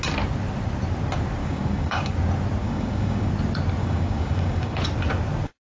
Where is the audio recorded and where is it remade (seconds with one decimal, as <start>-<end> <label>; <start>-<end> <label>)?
0.0-1.4 recorded; 1.4-2.1 remade; 2.1-2.6 recorded; 2.6-3.3 remade; 3.3-3.8 recorded; 3.8-4.8 remade; 4.8-5.8 recorded